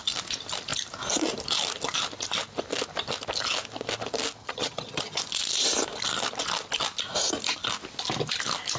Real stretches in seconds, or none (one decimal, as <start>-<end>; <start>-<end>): 0.0-4.4; 5.2-8.8